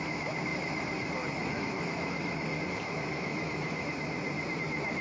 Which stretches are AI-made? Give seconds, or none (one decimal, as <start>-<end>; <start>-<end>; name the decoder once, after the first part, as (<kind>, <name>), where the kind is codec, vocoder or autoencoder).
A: 0.5-2.6 (autoencoder, DAC-VAE); 3.1-3.9